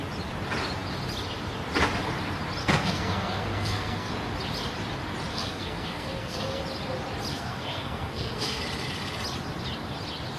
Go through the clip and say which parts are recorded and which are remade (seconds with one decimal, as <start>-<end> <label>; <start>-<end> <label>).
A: 0.0-2.6 recorded; 2.6-4.1 remade; 4.1-5.3 recorded; 5.3-6.6 remade; 6.6-7.3 recorded; 7.3-8.6 remade; 8.6-10.4 recorded